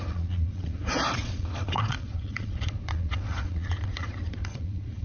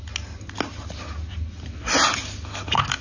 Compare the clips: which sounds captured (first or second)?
second